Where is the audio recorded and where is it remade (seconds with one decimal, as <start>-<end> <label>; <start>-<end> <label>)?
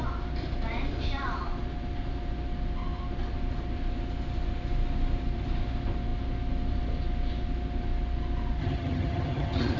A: 0.0-8.6 recorded; 8.6-9.8 remade